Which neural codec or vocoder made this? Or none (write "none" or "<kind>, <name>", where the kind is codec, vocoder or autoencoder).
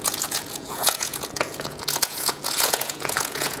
vocoder, Vocos